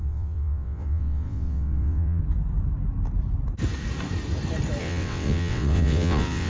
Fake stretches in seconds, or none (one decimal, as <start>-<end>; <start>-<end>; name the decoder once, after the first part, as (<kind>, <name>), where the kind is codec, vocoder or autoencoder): 0.0-2.2 (vocoder, WaveNeXt); 4.8-6.5